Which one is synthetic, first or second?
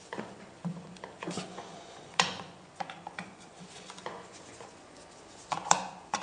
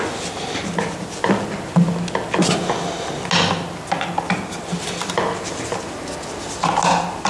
first